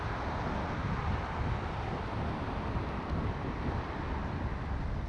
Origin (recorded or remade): recorded